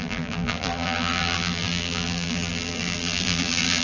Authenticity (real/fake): fake